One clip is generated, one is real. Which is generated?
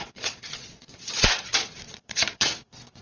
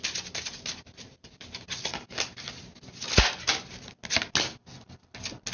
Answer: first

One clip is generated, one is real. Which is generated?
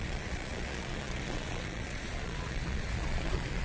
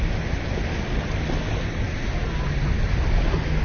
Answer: first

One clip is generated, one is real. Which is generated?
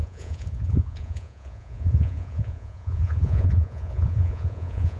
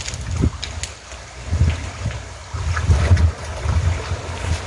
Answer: first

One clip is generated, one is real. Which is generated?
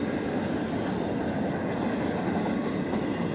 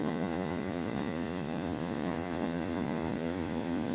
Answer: second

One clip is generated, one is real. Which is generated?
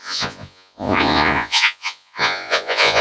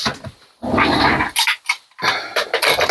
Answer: first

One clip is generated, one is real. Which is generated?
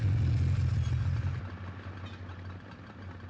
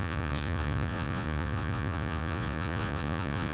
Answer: second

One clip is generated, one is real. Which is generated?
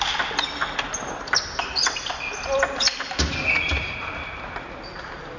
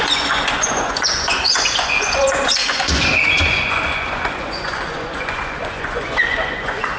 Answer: second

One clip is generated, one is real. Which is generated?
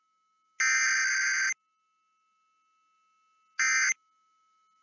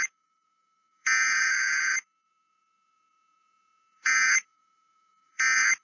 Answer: second